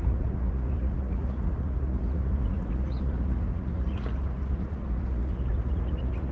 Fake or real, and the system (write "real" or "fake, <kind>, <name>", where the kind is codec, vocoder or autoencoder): fake, vocoder, Vocos